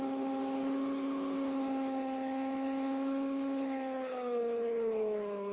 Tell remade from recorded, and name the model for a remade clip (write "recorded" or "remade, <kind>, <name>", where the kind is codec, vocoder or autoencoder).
remade, codec, HILCodec